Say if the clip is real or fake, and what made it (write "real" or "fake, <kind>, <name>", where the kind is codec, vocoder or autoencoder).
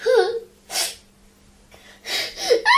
real